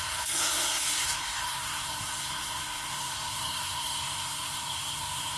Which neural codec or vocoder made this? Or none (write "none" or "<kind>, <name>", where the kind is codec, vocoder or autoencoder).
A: codec, SNAC